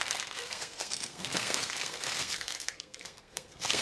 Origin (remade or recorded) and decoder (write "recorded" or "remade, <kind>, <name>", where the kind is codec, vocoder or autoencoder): remade, codec, SNAC